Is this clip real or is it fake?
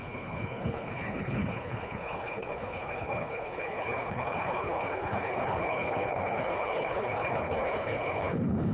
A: fake